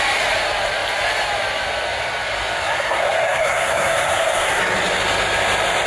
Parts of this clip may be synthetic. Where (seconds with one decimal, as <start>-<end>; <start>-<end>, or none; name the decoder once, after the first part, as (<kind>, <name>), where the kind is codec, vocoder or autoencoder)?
2.6-4.6 (codec, SNAC)